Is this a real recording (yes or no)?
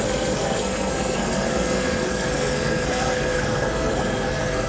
no